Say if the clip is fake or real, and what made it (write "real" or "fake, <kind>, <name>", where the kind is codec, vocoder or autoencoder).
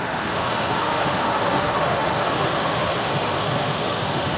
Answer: fake, autoencoder, DAC-VAE